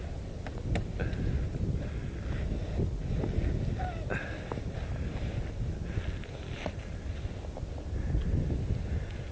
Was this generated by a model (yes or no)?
no